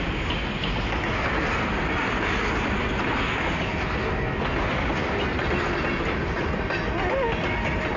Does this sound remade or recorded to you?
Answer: recorded